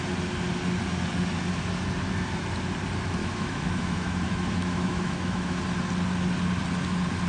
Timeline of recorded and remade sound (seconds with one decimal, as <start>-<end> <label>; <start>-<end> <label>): 0.0-3.2 recorded; 3.2-5.6 remade; 5.6-7.3 recorded